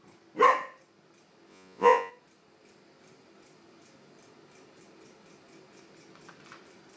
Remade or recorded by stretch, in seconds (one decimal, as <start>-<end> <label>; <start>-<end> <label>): 0.0-1.5 recorded; 1.5-2.1 remade; 2.1-7.0 recorded